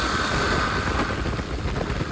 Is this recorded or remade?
recorded